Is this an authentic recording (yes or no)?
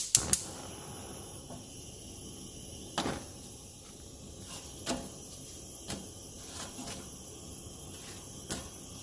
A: yes